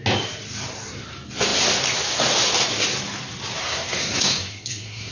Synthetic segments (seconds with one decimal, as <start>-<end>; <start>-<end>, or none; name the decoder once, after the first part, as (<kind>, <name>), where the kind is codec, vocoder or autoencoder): 3.6-5.1 (codec, SNAC)